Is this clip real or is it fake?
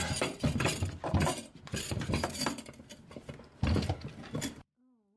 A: real